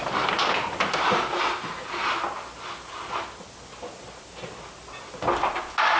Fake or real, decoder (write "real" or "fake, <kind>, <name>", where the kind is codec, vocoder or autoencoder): real